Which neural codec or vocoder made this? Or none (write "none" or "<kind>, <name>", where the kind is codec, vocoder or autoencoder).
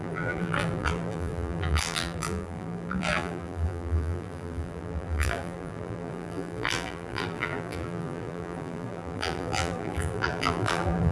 vocoder, BigVGAN v2